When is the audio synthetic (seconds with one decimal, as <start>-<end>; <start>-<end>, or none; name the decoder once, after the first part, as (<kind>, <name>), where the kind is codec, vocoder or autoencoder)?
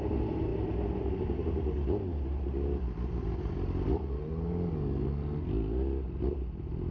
none